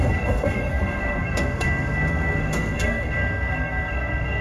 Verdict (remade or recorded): remade